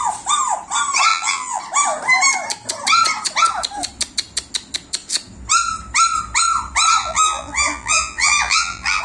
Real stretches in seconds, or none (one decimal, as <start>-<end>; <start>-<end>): 0.0-1.1; 1.6-7.0